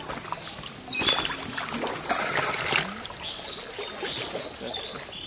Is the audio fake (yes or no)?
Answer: no